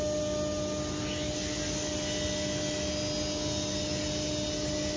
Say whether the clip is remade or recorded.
recorded